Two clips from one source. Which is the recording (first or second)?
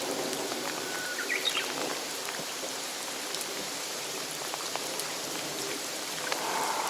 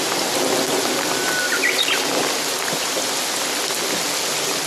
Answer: second